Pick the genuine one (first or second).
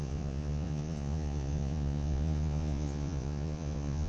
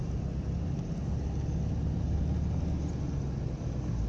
second